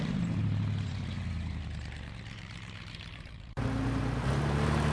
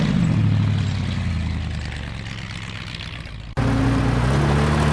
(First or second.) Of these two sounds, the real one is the second